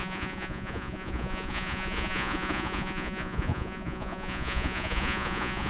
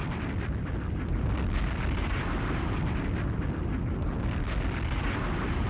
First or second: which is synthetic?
first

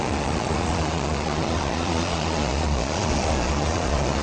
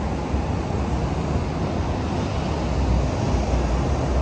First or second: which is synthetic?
first